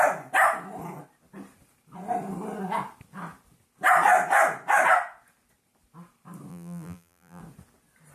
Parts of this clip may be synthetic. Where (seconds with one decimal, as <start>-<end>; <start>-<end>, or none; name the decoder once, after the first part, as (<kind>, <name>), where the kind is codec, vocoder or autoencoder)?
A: 6.5-7.4 (vocoder, BigVGAN v2)